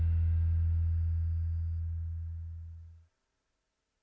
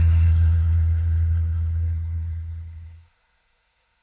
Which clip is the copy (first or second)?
second